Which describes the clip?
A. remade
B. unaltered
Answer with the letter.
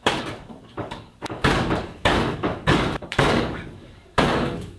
A